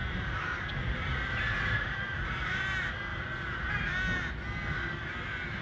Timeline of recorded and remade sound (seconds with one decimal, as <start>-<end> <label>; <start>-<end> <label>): 0.0-2.6 remade; 2.6-3.1 recorded; 3.1-3.7 remade; 3.7-5.6 recorded